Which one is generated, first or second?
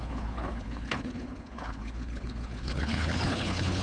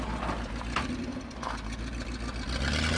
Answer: first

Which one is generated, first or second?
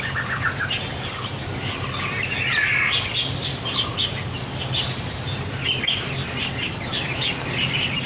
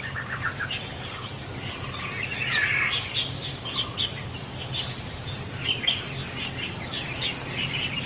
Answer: second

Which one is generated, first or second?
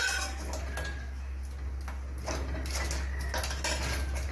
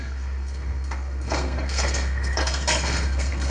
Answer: second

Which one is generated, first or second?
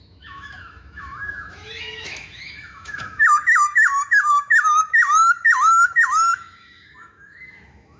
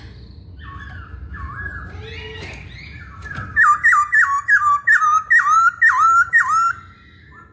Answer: first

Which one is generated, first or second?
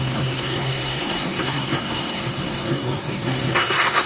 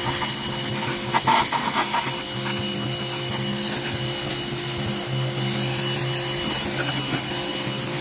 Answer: first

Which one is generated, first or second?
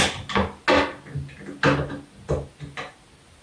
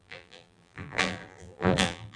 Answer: second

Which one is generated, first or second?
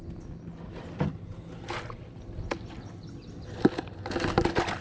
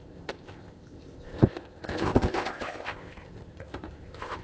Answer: second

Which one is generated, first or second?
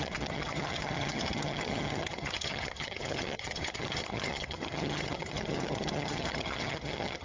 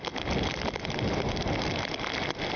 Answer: first